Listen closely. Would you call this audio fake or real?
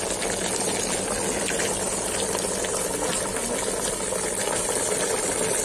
real